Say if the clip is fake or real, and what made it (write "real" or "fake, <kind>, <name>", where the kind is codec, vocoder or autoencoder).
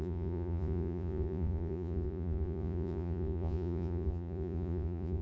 fake, vocoder, Vocos